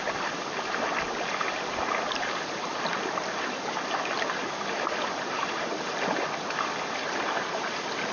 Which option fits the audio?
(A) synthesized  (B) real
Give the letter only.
B